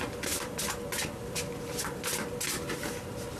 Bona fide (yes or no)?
yes